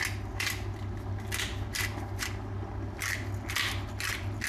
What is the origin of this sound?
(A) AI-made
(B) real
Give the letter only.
B